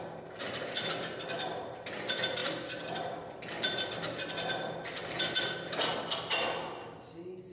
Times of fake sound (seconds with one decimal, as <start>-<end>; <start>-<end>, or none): none